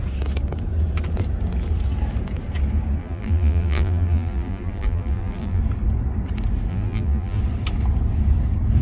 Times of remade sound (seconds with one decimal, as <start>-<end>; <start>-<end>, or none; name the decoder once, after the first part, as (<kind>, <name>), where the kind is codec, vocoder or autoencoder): 3.0-5.6 (vocoder, BigVGAN v2); 6.7-7.4